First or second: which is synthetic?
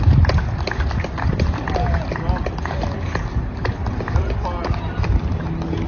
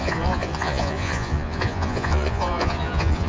second